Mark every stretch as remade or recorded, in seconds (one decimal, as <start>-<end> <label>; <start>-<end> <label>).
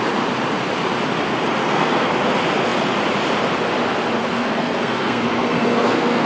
0.0-1.6 recorded; 1.6-2.1 remade; 2.1-4.2 recorded; 4.2-6.3 remade